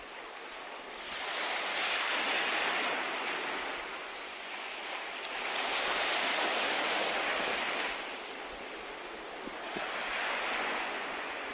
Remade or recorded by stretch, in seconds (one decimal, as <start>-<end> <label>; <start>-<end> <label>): 0.0-4.0 recorded; 4.0-4.8 remade; 4.8-10.1 recorded; 10.1-11.5 remade